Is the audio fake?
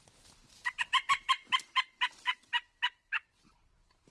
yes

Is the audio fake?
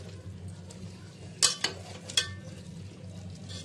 no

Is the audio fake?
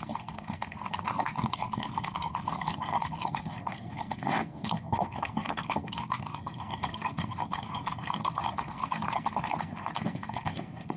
yes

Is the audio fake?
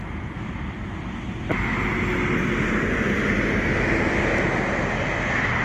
no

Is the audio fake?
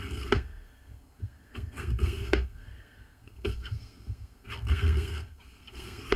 yes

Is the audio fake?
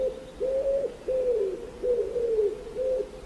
no